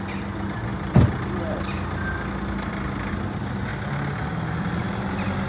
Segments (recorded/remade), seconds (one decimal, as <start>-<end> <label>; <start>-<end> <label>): 0.0-5.5 recorded